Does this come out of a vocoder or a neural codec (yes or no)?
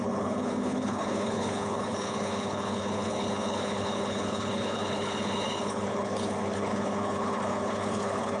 yes